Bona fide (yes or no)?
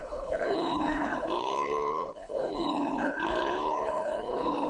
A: no